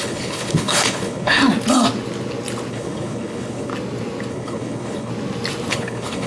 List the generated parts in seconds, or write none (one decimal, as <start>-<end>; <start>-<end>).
0.0-1.4; 2.7-3.7; 4.3-5.1; 5.7-6.3